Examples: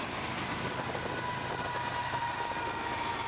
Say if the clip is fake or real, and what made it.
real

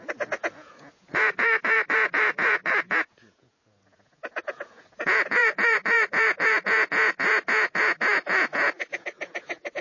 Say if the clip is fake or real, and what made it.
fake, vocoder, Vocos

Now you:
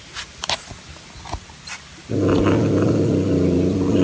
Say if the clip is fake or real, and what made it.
real